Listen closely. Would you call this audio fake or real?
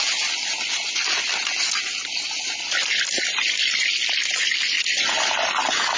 real